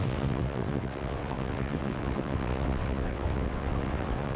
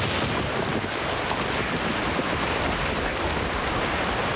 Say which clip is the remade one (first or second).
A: first